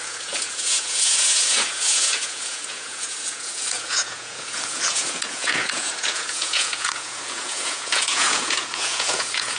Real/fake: fake